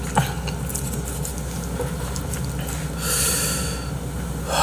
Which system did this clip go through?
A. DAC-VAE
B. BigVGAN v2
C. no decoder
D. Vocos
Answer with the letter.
C